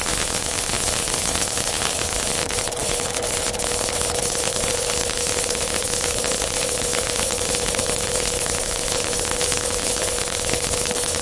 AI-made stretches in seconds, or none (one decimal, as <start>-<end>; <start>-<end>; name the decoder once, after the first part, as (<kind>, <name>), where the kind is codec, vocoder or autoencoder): 0.0-11.2 (codec, HILCodec)